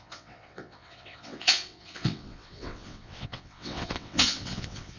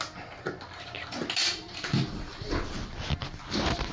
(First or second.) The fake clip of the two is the first